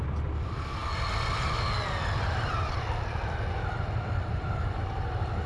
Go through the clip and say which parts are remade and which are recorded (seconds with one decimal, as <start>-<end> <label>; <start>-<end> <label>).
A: 0.0-5.5 recorded